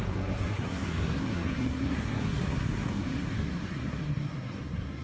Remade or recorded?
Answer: remade